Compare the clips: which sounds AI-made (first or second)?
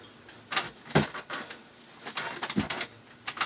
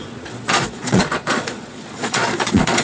second